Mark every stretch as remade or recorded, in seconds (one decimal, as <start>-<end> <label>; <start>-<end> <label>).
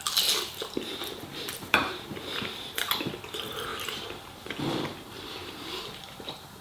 0.0-1.3 recorded; 1.3-3.1 remade; 3.1-5.4 recorded; 5.4-6.6 remade